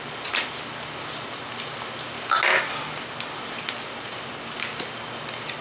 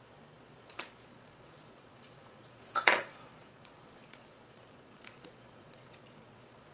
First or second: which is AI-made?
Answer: second